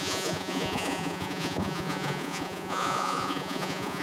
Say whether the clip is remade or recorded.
remade